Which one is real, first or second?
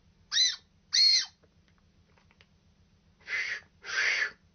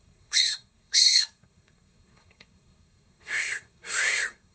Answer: first